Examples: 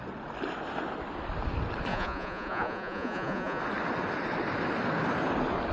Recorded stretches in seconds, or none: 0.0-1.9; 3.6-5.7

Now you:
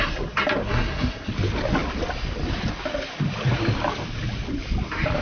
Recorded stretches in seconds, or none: 0.0-0.6; 1.3-5.2

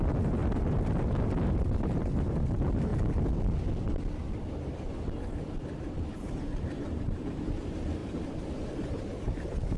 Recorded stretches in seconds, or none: 2.9-6.3

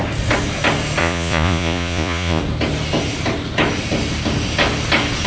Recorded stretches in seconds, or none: 0.0-1.0; 2.4-5.3

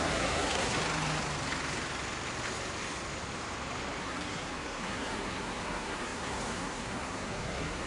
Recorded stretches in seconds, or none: 0.8-4.0

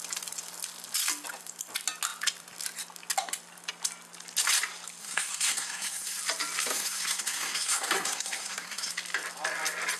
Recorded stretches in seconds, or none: 0.0-5.0; 6.2-6.7; 8.9-10.0

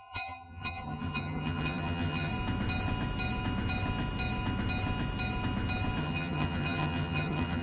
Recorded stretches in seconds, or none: 2.3-6.0

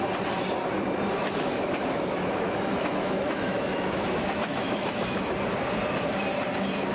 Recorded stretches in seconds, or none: 0.0-1.2; 5.3-6.9